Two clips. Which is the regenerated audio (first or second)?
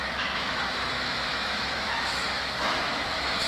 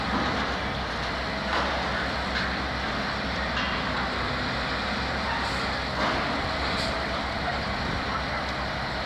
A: first